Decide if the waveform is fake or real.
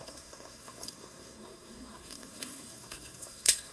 fake